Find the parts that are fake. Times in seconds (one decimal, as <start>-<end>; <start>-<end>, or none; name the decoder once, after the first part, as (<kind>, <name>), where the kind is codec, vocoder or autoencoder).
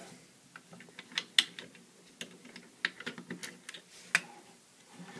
none